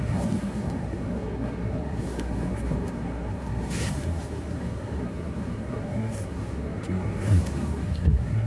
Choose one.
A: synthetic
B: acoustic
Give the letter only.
A